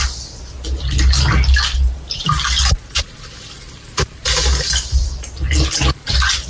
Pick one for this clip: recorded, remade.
recorded